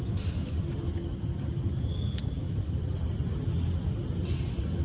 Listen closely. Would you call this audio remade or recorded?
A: recorded